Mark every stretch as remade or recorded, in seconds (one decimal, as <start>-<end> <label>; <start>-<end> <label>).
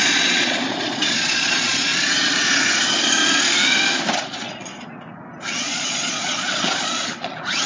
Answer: 0.0-1.9 remade; 1.9-4.1 recorded; 4.1-4.7 remade; 4.7-5.6 recorded; 5.6-7.7 remade